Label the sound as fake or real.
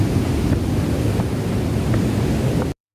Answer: real